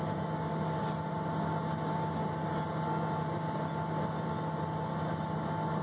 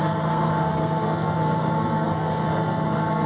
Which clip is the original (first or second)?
first